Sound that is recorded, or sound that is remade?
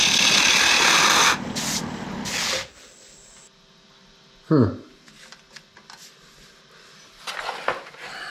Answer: recorded